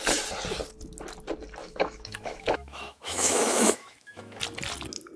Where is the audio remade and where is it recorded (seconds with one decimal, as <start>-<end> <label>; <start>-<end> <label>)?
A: 0.0-1.6 recorded; 1.6-4.4 remade; 4.4-5.2 recorded